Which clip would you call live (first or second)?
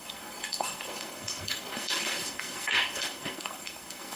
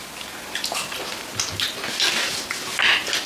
second